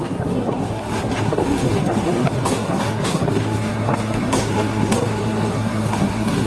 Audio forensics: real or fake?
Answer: fake